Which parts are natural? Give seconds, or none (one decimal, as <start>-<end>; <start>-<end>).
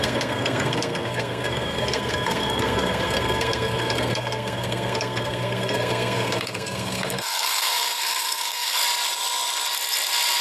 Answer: 8.8-10.4